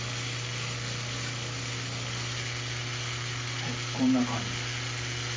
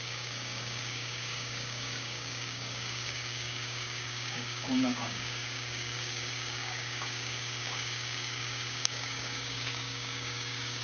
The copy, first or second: second